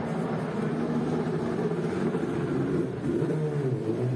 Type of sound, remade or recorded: remade